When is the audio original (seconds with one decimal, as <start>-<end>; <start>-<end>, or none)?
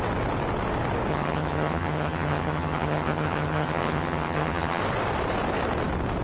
0.0-1.1; 4.8-6.2